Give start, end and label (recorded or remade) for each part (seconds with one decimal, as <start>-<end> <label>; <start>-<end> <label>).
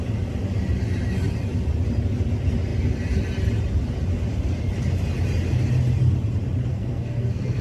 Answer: 0.0-6.7 recorded; 6.7-7.6 remade